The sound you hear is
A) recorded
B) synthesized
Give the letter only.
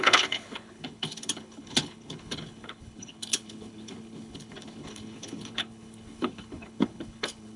B